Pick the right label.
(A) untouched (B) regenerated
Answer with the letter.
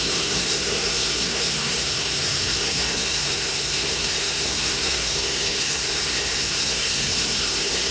B